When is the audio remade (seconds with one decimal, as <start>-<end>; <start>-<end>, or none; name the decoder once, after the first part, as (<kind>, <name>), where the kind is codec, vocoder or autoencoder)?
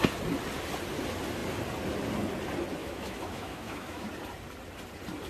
2.8-4.1 (autoencoder, DAC-VAE)